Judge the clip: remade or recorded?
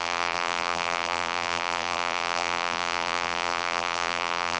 remade